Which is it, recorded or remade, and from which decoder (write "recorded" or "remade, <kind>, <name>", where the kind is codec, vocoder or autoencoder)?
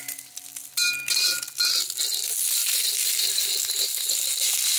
recorded